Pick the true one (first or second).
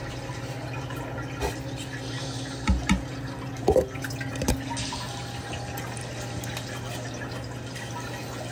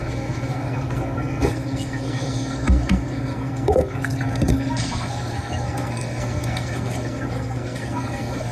first